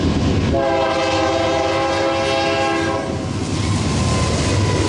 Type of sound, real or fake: real